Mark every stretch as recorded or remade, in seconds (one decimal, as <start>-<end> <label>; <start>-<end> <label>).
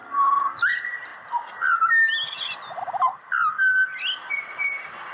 0.0-5.1 recorded